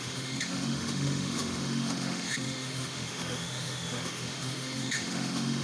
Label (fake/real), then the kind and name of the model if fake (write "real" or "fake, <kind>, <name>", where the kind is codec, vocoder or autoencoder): fake, autoencoder, DAC-VAE